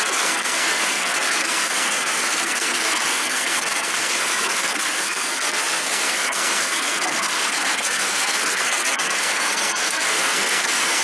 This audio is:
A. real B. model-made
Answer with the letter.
B